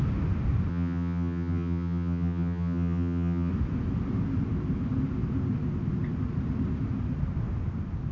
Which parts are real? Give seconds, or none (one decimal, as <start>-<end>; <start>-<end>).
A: 0.0-0.7; 3.5-8.1